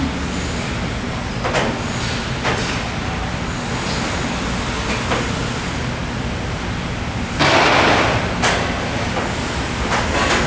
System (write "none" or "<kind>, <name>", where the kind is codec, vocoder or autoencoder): none